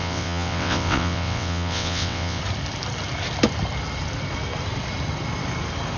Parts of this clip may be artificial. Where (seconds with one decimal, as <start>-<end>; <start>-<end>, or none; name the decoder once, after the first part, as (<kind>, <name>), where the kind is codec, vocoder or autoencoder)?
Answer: 0.0-2.4 (vocoder, WaveNeXt)